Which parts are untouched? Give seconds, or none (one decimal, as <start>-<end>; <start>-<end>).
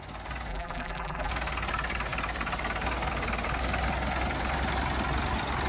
0.0-0.5; 1.3-5.7